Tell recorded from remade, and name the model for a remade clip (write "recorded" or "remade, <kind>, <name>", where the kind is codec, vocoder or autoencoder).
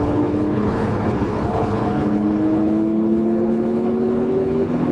remade, codec, HILCodec